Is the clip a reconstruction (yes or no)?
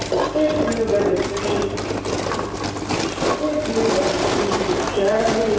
no